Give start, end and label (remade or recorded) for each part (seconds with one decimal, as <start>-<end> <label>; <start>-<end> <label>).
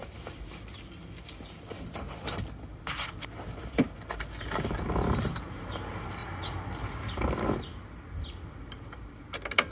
0.0-9.7 recorded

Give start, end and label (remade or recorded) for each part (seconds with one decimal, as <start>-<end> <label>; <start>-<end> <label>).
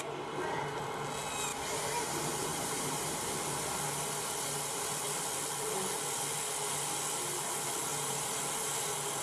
0.0-2.5 recorded; 2.5-3.3 remade; 3.3-7.9 recorded; 7.9-8.4 remade; 8.4-9.2 recorded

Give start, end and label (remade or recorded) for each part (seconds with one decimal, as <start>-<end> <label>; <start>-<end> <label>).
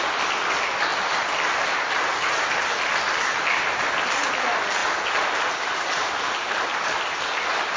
0.0-7.8 recorded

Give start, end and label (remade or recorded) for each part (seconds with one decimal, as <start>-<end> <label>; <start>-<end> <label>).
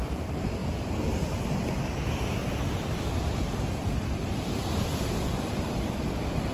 0.0-0.6 remade; 0.6-1.7 recorded; 1.7-6.5 remade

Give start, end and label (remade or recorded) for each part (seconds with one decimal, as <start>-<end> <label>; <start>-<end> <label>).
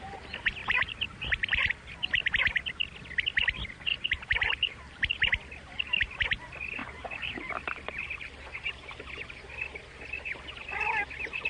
0.0-0.6 recorded; 0.6-1.7 remade; 1.7-3.9 recorded; 3.9-5.0 remade; 5.0-6.8 recorded; 6.8-8.7 remade; 8.7-11.5 recorded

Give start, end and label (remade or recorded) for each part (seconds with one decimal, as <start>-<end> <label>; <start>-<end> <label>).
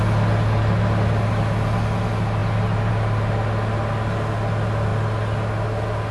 0.0-6.1 recorded